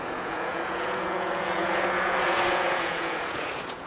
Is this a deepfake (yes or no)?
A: yes